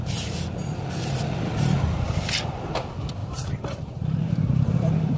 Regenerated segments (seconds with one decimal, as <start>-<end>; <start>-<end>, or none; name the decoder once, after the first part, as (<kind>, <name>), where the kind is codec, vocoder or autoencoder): 3.2-5.2 (vocoder, BigVGAN v2)